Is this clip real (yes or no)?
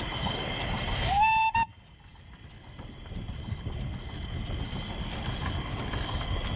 yes